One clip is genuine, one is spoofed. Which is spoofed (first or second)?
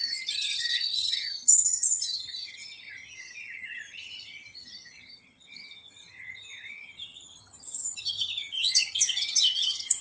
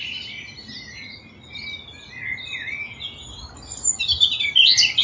first